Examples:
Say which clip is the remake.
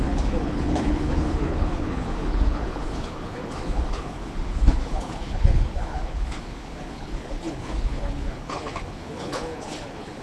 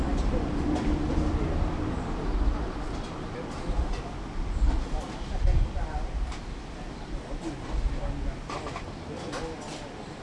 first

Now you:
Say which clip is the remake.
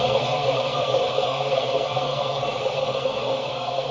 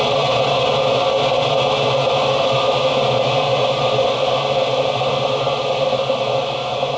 first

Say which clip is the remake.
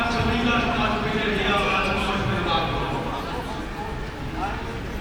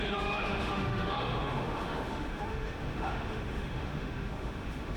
second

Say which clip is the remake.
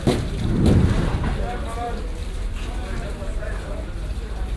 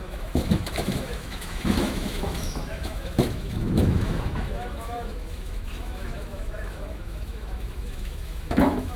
second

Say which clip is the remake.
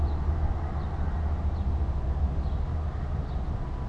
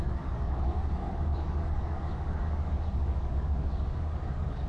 second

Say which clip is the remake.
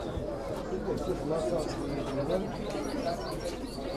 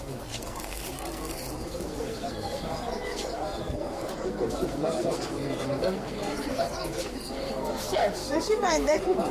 second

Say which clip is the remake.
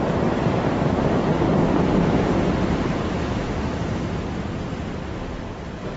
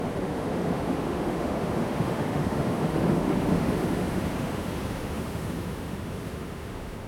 second